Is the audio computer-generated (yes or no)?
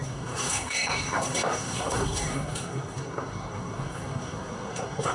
yes